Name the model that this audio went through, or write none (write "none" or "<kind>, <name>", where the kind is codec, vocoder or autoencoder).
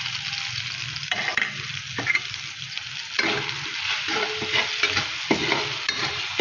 none